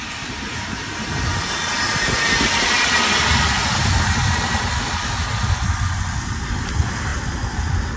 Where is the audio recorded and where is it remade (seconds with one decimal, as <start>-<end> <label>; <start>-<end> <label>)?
0.0-8.0 recorded